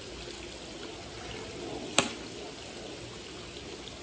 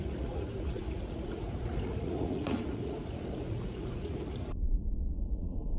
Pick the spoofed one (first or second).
second